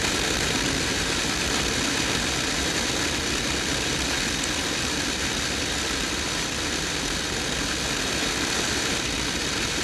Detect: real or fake real